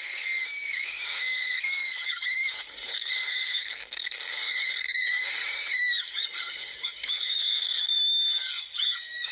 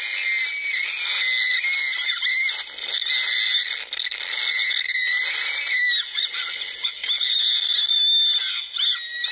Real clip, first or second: second